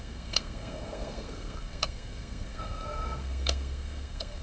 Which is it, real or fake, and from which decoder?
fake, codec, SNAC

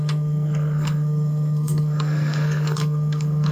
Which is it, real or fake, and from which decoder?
fake, codec, SNAC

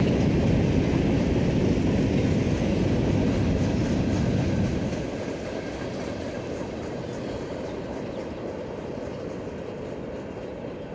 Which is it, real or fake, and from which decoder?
real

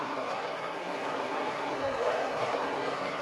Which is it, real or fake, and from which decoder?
fake, codec, SNAC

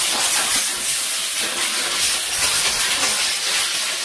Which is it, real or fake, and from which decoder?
real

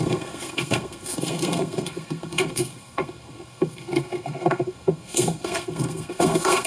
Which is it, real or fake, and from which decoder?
fake, codec, SNAC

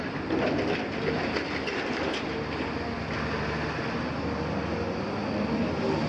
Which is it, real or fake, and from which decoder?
real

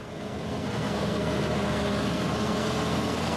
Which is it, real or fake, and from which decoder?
fake, codec, SNAC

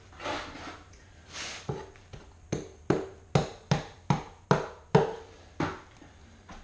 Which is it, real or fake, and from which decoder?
real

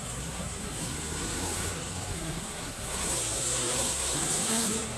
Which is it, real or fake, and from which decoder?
fake, codec, SNAC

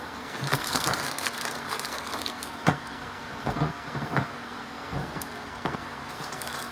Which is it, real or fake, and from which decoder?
fake, codec, SNAC